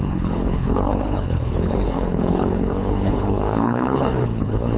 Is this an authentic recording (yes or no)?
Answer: no